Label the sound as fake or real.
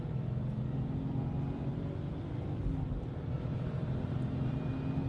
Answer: real